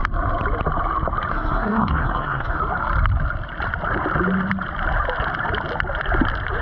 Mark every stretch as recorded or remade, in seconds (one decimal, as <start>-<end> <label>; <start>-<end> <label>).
0.0-1.3 recorded; 1.3-2.6 remade; 2.6-6.6 recorded